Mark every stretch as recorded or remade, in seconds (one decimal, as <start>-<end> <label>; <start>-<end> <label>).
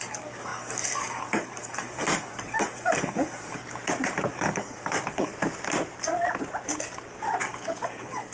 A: 0.0-3.8 remade; 3.8-4.3 recorded; 4.3-5.3 remade; 5.3-7.4 recorded; 7.4-8.3 remade